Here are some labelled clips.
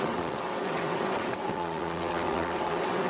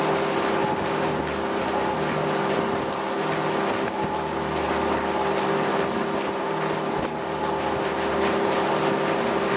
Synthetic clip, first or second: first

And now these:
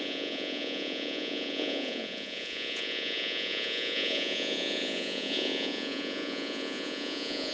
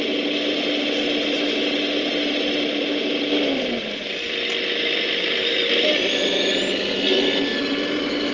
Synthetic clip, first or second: first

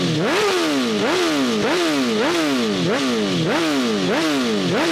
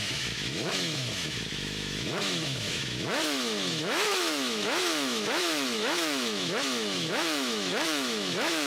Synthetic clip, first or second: second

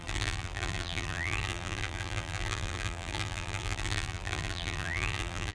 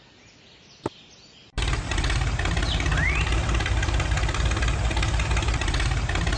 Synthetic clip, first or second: first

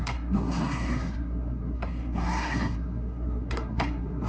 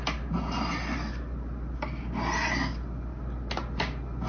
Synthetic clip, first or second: first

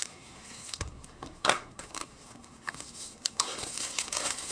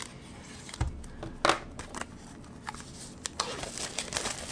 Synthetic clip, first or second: first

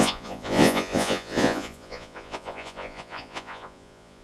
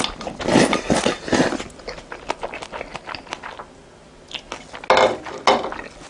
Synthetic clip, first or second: first